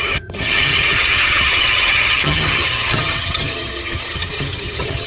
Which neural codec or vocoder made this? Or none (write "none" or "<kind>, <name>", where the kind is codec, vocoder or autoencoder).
vocoder, HiFi-GAN